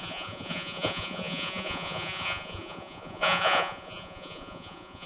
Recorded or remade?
remade